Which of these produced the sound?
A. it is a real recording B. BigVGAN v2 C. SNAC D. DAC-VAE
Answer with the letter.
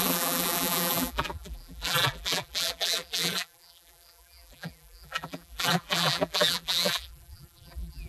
B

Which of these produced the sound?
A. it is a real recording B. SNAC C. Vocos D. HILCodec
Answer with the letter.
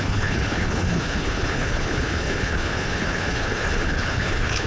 D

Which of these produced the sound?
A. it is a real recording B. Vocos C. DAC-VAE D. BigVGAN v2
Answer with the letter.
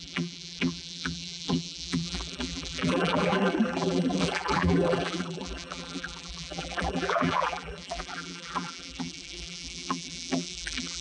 D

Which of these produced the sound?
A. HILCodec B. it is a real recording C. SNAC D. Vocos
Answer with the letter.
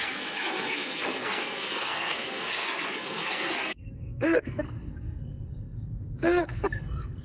C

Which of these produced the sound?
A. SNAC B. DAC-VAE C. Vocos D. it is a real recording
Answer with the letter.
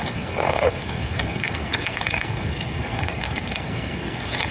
A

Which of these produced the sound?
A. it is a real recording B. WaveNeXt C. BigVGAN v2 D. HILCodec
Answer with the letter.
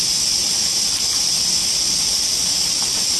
A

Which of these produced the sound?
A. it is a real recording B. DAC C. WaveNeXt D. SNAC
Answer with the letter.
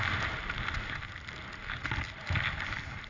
A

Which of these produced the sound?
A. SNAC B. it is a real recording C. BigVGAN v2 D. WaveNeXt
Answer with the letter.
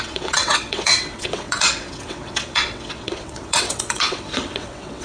D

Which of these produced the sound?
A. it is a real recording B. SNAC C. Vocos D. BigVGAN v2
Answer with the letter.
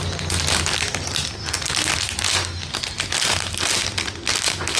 A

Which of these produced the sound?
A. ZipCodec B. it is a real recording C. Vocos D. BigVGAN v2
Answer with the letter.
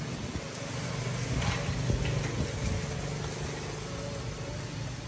B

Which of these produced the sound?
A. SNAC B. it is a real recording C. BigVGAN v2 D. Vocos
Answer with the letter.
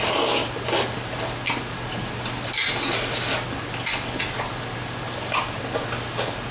B